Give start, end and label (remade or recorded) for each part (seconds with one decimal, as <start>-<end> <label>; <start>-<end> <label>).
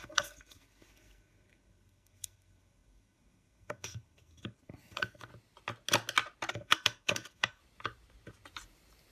0.0-5.3 remade; 5.3-6.5 recorded; 6.5-7.6 remade; 7.6-9.1 recorded